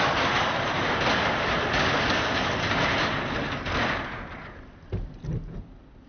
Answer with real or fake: real